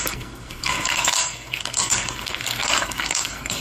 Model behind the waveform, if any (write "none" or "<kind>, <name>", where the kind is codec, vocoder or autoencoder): codec, SNAC